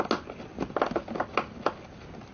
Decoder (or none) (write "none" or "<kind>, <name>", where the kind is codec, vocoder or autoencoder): none